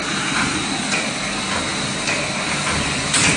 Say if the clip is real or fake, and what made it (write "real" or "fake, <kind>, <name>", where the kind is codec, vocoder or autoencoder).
real